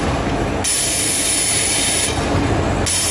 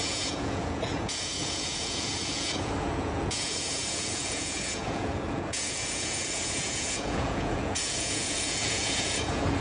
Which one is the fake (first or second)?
second